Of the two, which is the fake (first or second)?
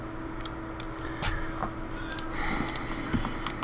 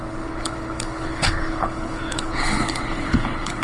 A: second